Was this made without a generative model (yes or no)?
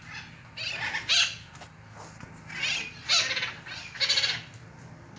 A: yes